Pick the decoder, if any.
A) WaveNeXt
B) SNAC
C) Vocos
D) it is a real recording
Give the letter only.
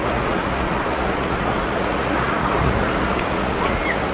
C